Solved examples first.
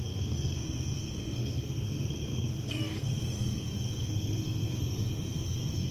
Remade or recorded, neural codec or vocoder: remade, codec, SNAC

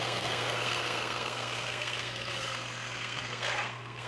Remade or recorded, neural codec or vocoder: remade, codec, SNAC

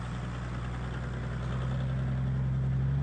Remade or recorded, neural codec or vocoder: recorded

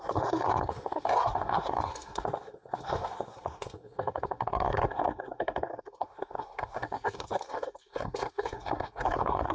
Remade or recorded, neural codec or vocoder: remade, codec, SNAC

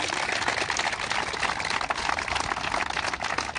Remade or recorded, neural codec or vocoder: recorded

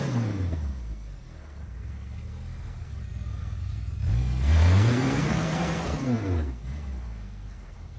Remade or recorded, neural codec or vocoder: remade, codec, SNAC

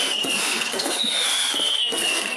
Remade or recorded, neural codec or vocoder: remade, codec, SNAC